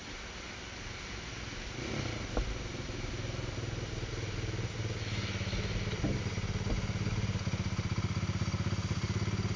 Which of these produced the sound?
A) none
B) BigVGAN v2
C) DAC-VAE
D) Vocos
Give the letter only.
A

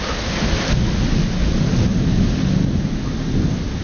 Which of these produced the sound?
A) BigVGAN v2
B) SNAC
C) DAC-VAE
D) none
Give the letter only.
D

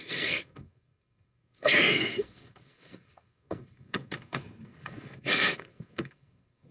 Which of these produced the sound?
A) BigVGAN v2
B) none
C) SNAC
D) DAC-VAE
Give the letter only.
C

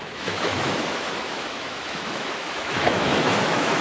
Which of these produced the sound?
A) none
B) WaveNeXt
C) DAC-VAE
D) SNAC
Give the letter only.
C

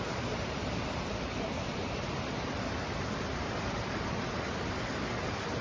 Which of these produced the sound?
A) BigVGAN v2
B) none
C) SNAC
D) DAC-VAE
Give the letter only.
A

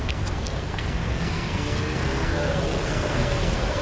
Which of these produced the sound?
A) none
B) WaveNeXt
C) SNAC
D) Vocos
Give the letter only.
C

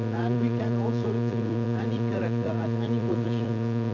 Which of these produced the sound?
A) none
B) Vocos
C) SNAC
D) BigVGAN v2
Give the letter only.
B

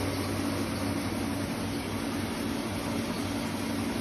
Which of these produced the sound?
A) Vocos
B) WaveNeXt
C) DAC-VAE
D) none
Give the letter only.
D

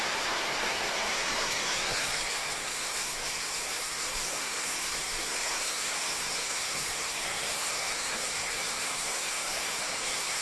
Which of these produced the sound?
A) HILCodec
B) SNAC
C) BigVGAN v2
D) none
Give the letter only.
B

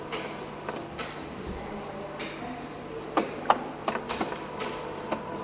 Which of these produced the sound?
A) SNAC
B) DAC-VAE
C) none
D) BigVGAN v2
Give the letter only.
C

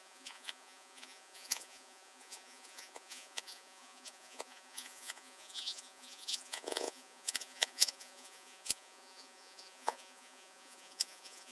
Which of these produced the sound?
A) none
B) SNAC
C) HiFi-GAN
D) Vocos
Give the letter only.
D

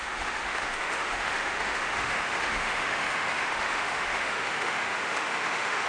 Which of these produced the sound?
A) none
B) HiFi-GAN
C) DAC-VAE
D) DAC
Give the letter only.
C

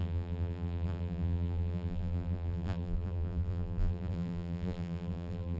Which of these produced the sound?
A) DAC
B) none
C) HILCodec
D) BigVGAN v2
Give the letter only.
D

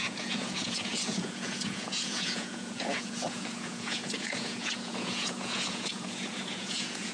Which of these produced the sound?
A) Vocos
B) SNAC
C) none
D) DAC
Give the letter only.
A